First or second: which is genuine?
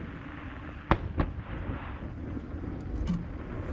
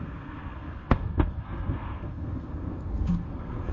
first